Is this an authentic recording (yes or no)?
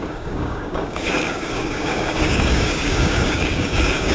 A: no